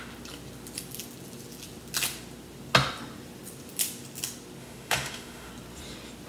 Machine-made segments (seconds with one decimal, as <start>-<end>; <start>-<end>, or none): 4.6-5.5